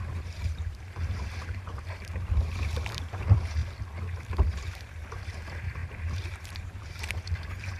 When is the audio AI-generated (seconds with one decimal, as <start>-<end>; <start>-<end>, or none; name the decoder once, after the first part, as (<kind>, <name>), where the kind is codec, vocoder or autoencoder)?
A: 0.0-3.6 (vocoder, BigVGAN v2); 4.3-7.8